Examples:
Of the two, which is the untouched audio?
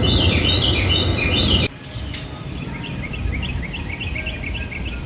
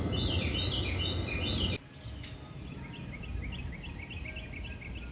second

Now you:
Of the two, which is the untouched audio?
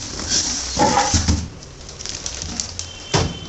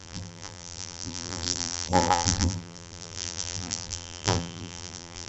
first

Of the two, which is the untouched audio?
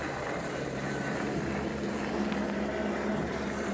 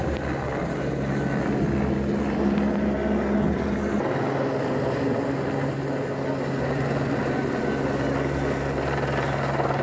second